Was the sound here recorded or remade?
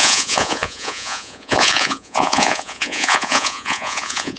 remade